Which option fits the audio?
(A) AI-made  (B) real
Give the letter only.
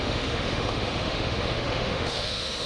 A